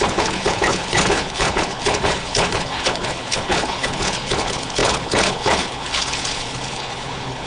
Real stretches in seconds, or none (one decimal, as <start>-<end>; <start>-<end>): none